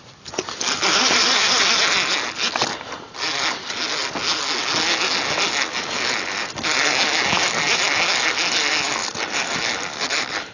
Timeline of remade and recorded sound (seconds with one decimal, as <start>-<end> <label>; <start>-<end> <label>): 0.0-10.5 recorded